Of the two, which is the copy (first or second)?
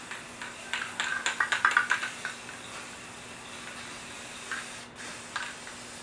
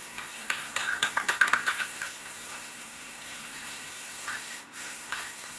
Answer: second